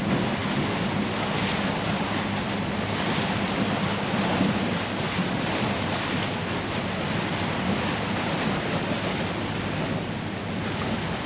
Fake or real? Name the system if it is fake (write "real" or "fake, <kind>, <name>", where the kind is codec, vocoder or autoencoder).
real